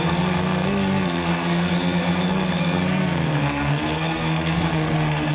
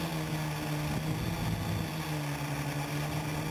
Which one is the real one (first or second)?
second